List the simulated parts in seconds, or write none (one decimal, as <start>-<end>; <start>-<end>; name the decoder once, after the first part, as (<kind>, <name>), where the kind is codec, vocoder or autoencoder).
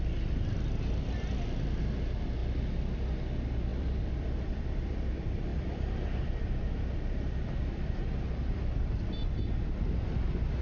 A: 3.7-5.1 (vocoder, BigVGAN v2); 5.5-7.6